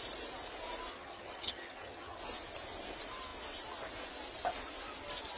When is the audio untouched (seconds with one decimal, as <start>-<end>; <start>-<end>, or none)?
0.0-0.9; 2.2-5.4